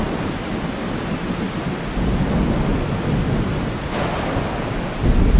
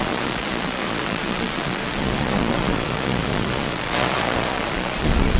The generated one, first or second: second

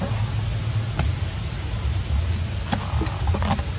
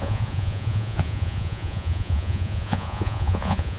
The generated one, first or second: second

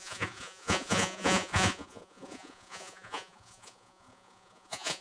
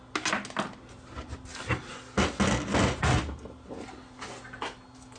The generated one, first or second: first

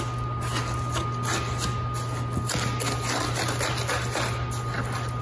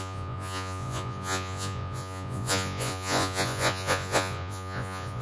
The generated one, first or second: second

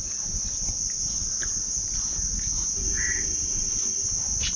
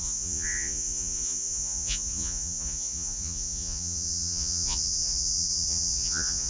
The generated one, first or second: second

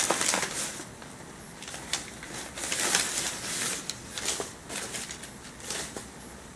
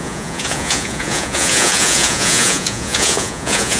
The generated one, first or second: second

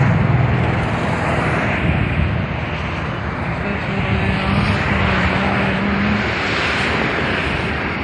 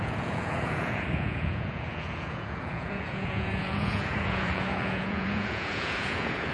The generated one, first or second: second